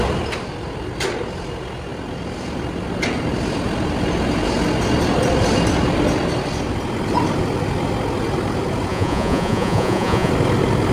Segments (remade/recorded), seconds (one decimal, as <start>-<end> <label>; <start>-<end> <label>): 0.0-8.9 recorded; 8.9-10.3 remade; 10.3-10.9 recorded